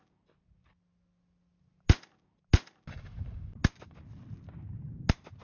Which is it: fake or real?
real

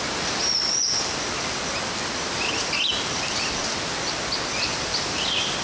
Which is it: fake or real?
real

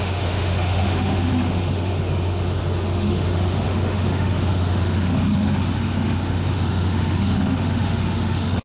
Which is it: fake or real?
fake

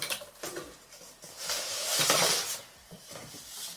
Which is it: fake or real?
real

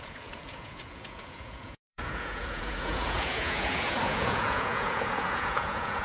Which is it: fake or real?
fake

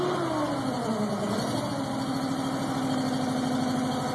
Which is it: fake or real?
real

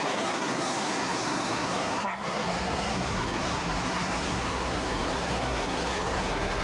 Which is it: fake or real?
fake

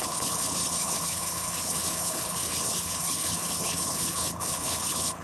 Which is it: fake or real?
fake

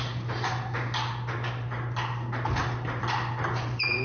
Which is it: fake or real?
real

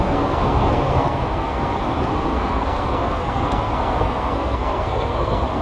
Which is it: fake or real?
fake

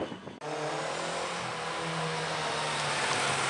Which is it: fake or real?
real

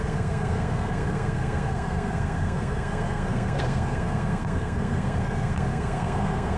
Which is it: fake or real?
fake